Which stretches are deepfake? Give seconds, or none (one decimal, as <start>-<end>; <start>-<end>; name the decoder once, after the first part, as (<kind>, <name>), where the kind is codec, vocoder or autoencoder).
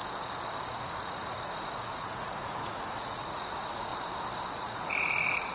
0.8-3.9 (vocoder, Vocos); 4.5-5.5